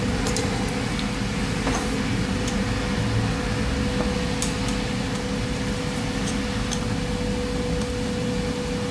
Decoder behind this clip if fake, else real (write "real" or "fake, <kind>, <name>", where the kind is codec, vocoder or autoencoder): real